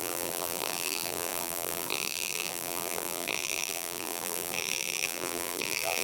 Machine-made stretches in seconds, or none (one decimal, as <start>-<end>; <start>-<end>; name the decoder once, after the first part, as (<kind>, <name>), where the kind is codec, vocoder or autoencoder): 0.0-6.0 (vocoder, BigVGAN v2)